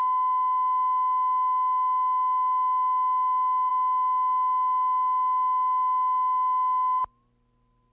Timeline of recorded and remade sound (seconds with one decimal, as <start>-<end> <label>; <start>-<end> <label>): 0.0-7.9 recorded